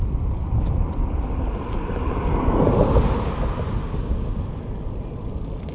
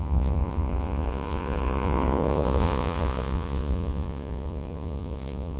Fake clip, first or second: second